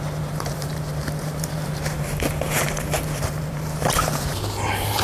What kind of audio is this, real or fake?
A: fake